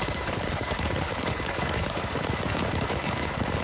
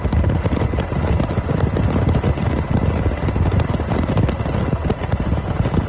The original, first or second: second